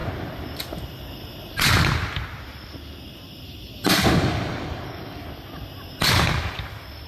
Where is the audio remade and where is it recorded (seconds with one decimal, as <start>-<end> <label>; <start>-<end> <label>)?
0.0-4.3 recorded; 4.3-5.2 remade; 5.2-7.1 recorded